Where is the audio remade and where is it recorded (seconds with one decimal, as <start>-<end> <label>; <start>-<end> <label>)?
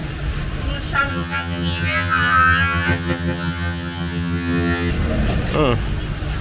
0.0-1.1 recorded; 1.1-4.9 remade; 4.9-6.4 recorded